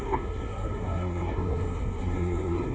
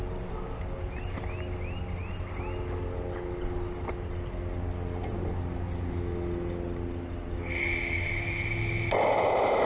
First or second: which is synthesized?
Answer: first